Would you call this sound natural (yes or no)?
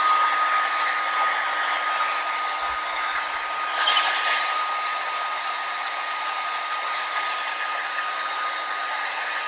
yes